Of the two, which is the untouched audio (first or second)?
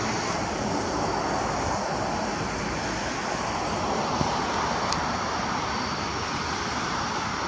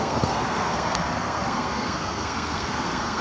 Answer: first